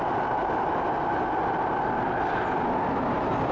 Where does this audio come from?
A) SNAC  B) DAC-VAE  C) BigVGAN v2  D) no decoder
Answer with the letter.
D